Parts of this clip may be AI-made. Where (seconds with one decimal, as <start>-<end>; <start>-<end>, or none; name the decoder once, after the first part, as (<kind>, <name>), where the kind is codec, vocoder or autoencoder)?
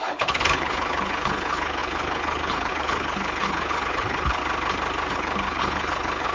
0.0-4.4 (codec, HILCodec); 5.1-6.3